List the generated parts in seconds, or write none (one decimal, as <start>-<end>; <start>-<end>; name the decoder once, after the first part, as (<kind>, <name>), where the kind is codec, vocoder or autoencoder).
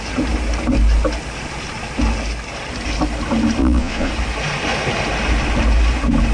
3.6-4.1 (vocoder, Vocos)